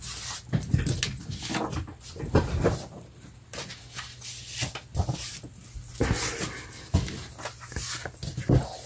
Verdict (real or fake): real